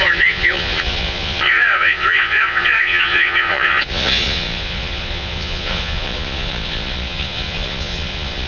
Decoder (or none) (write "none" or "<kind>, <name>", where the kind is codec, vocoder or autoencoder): vocoder, Vocos